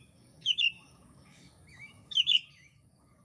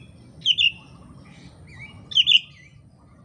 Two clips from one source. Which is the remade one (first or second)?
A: first